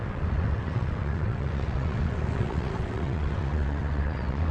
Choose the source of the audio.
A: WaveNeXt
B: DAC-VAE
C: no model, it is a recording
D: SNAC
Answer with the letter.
A